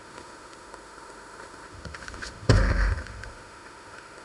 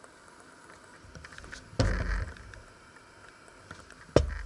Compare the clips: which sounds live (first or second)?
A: second